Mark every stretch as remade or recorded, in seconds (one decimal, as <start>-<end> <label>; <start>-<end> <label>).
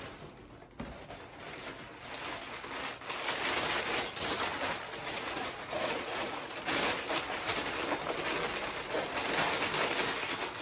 0.0-5.0 recorded; 5.0-6.5 remade; 6.5-10.6 recorded